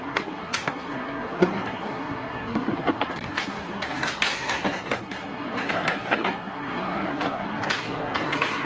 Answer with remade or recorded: remade